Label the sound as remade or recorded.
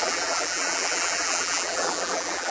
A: remade